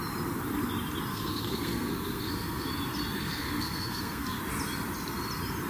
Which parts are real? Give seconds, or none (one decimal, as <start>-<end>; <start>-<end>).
0.0-1.1; 2.7-3.2; 4.4-5.7